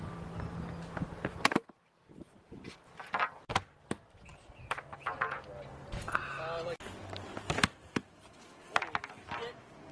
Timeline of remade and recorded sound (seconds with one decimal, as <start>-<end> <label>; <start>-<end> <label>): 0.0-9.9 recorded